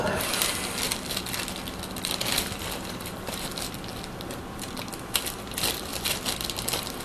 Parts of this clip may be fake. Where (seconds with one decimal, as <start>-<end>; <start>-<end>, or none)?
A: 2.3-4.9